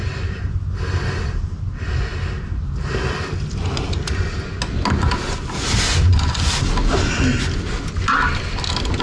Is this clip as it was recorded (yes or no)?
yes